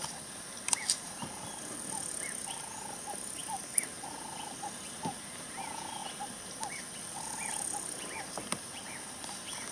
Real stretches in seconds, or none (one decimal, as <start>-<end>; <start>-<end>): 0.0-9.7